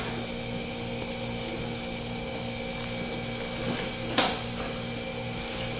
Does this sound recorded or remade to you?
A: recorded